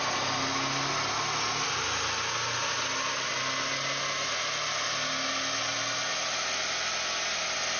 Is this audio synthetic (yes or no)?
no